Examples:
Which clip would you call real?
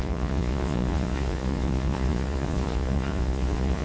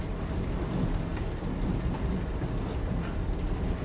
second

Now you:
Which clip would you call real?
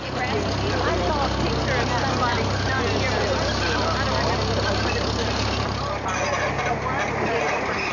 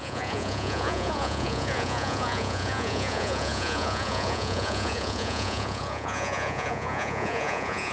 first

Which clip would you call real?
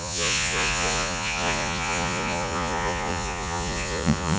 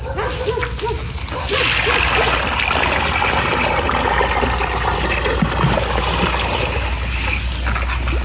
second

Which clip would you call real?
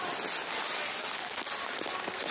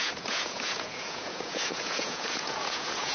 first